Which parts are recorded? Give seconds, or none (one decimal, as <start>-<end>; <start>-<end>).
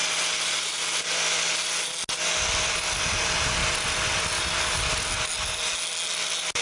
0.0-6.6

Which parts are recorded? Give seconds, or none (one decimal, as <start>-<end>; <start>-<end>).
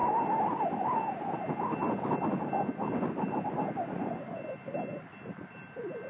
0.0-6.1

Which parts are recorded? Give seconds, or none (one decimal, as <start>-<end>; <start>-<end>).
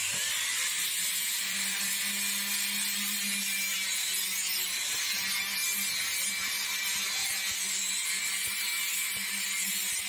1.9-10.1